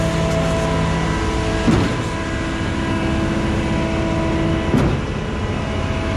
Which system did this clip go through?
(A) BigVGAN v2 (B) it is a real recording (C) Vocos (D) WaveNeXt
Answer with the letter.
B